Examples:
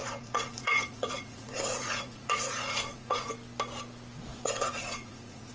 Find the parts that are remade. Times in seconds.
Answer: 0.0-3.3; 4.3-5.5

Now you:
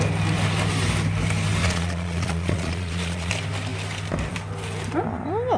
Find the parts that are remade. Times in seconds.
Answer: 1.6-3.3

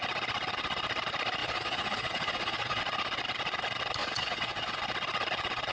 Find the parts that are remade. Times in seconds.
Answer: 1.4-2.8; 4.0-4.8

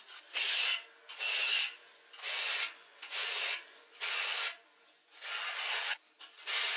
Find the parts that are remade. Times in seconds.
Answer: 1.8-5.6